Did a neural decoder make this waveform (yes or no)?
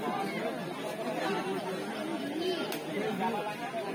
no